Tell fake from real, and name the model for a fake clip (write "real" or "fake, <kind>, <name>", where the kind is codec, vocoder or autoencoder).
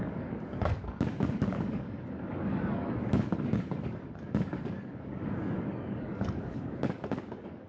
fake, codec, DAC